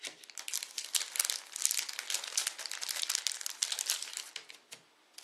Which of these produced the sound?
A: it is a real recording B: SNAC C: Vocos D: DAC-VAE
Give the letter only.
A